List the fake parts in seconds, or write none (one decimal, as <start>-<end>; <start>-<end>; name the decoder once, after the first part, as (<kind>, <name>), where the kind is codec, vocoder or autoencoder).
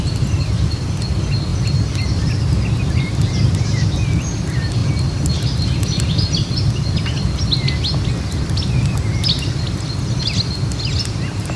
none